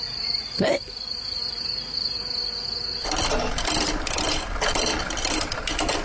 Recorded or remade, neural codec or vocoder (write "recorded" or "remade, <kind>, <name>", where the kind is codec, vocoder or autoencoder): recorded